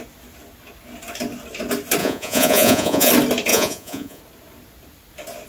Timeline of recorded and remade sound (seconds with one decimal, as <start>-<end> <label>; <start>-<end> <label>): 0.0-2.0 recorded; 2.0-3.1 remade; 3.1-3.5 recorded; 3.5-4.2 remade; 4.2-5.5 recorded